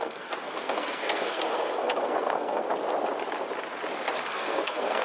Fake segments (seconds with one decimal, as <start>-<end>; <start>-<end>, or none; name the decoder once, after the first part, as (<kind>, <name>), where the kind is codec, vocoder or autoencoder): 0.0-2.7 (codec, SNAC); 4.2-5.0